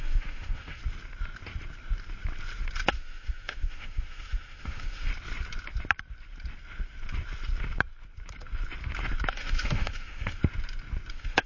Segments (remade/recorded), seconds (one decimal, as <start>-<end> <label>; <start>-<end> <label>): 0.0-0.8 remade; 0.8-2.9 recorded; 2.9-5.1 remade; 5.1-9.3 recorded; 9.3-10.4 remade; 10.4-11.1 recorded; 11.1-11.5 remade